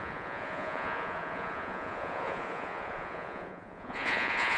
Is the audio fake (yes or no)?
yes